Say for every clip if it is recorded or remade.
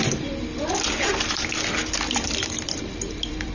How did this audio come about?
remade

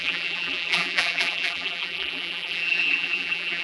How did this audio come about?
remade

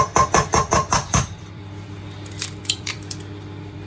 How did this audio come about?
remade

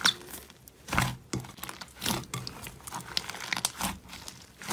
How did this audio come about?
recorded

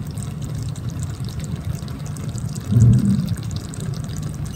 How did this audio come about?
remade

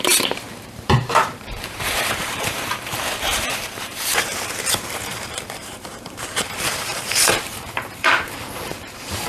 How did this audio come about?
remade